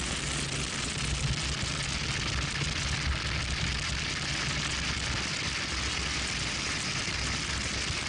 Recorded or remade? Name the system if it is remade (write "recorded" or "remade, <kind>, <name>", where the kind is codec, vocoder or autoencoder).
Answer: remade, vocoder, BigVGAN v2